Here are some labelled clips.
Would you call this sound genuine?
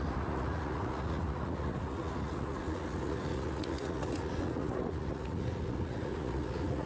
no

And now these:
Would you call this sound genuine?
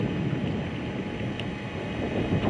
yes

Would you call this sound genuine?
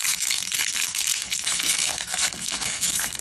no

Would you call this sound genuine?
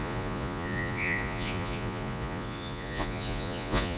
no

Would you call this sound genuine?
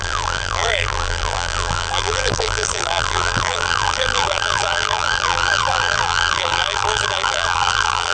no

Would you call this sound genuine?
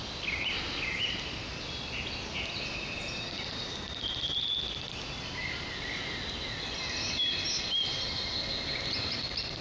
yes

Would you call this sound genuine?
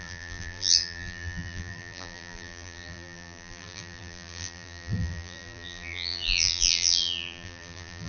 no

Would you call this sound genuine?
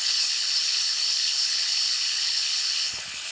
no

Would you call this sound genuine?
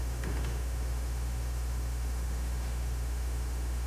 no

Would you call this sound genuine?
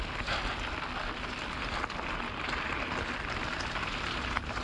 yes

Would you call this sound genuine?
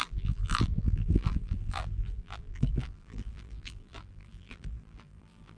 no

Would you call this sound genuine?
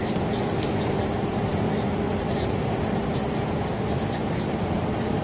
no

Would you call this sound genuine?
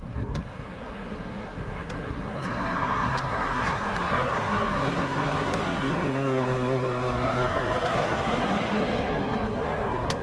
no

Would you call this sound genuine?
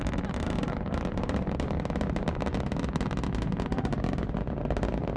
yes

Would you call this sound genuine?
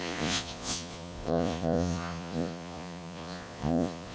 no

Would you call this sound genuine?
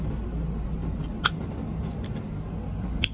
yes